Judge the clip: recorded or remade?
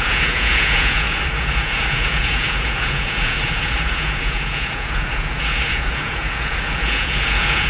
remade